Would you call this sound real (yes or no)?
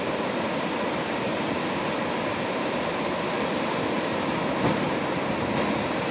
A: yes